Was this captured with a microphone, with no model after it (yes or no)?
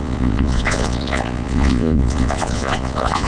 no